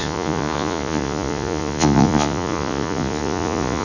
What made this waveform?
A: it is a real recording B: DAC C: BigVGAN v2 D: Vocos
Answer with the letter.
D